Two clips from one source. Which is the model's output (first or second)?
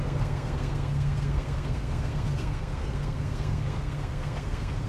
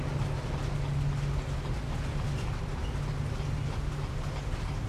first